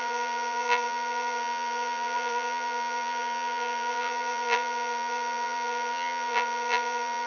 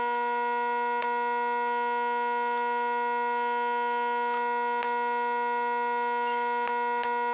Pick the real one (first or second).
second